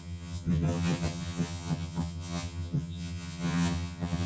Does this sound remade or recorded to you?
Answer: remade